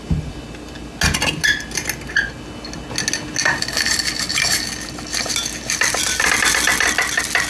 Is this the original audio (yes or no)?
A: yes